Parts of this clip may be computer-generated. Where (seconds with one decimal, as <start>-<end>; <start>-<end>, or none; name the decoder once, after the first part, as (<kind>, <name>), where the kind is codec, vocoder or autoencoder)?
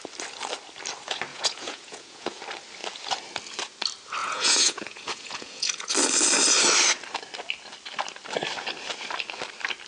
1.3-2.4 (vocoder, Vocos); 4.2-5.9